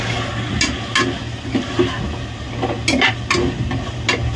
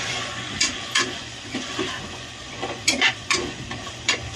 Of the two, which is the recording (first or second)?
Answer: first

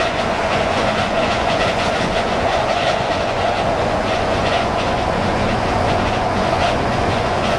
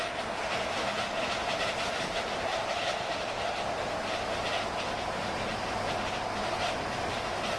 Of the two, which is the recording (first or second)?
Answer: second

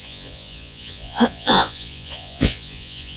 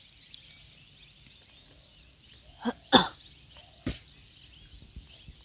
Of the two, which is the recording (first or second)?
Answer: second